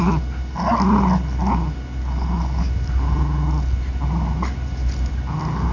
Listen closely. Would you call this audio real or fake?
real